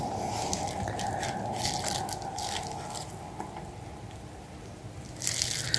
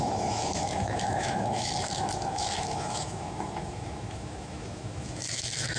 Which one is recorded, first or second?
first